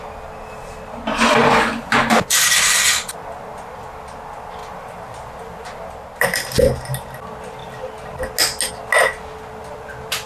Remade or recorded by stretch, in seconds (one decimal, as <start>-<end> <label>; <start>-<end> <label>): 0.0-1.4 recorded; 1.4-4.0 remade; 4.0-4.6 recorded; 4.6-6.6 remade; 6.6-10.3 recorded